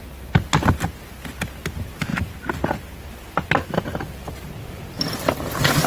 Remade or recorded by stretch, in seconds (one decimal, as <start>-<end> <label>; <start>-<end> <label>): 0.0-5.9 recorded